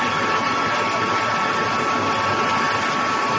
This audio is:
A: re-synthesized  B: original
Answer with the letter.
B